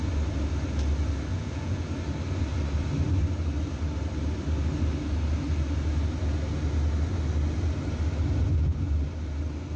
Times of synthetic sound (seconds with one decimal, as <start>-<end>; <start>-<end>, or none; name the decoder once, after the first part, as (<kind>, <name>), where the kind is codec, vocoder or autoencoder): 1.3-1.9 (vocoder, Vocos)